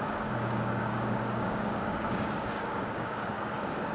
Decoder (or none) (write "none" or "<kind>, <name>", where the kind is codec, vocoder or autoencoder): codec, DAC